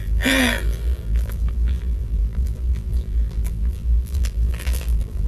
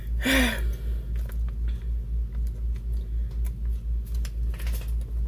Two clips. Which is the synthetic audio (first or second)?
first